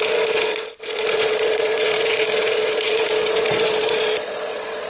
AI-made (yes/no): yes